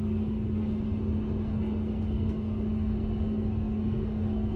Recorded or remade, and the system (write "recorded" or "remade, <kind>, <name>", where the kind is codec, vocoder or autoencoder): remade, codec, SNAC